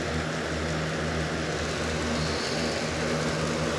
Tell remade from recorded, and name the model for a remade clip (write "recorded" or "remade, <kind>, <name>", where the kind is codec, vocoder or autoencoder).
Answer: recorded